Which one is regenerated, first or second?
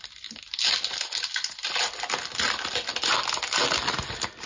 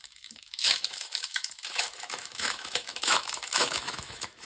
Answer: second